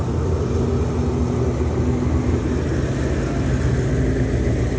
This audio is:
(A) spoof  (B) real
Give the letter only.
B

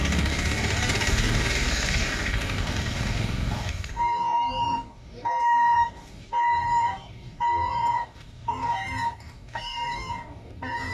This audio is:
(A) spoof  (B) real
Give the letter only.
A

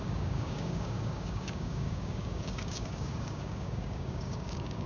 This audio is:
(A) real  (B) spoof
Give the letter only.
B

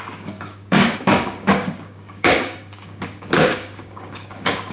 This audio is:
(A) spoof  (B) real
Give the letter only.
A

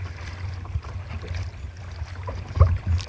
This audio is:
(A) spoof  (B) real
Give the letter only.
B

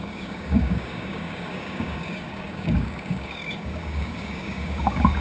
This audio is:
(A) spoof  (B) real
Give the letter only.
A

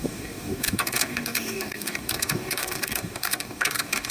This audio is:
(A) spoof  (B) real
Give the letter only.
A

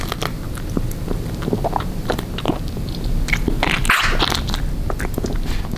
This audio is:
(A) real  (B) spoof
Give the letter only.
A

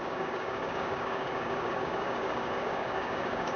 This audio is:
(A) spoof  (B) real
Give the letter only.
A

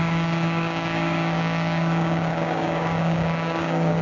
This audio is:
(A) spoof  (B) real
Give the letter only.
A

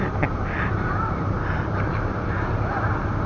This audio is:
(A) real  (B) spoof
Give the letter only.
A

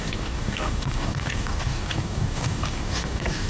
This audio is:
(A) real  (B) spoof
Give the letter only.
B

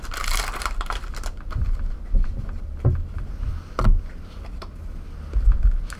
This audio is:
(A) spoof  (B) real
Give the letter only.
B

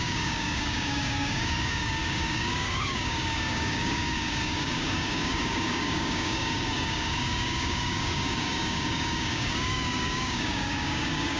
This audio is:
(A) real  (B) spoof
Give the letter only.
B